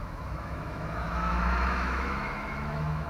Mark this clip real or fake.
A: fake